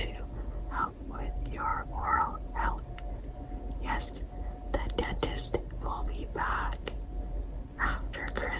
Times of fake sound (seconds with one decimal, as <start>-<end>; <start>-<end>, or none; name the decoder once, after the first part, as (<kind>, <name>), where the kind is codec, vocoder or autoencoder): 1.7-2.3 (vocoder, Vocos)